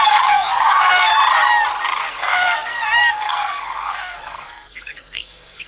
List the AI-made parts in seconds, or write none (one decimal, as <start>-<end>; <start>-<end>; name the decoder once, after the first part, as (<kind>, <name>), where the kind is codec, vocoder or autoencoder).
0.0-1.1 (codec, SNAC); 2.1-5.7